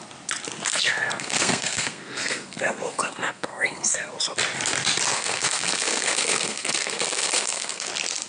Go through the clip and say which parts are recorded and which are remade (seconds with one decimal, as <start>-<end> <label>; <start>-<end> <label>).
0.0-0.7 recorded; 0.7-4.1 remade; 4.1-5.1 recorded; 5.1-7.9 remade; 7.9-8.3 recorded